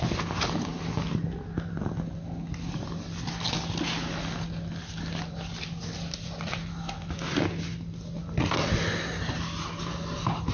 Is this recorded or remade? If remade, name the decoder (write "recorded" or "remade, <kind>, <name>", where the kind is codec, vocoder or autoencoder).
recorded